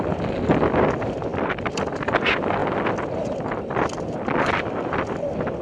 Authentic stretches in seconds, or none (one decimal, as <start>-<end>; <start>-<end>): 0.0-5.6